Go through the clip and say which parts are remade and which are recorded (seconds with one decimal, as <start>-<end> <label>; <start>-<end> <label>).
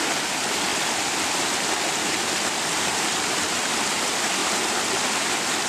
0.0-4.4 recorded; 4.4-5.3 remade; 5.3-5.7 recorded